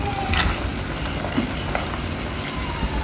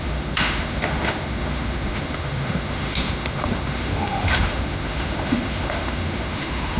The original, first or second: first